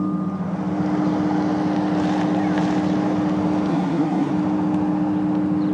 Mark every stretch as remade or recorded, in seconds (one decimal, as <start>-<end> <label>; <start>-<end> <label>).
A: 0.0-3.7 recorded; 3.7-4.3 remade; 4.3-5.7 recorded